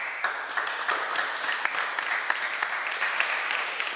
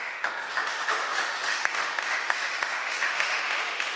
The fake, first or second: second